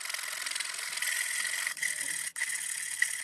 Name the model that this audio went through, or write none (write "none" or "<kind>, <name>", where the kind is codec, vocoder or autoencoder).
none